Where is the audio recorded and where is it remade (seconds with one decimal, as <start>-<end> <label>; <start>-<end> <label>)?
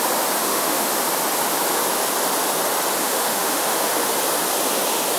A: 0.0-0.4 recorded; 0.4-0.9 remade; 0.9-3.0 recorded; 3.0-3.9 remade; 3.9-5.2 recorded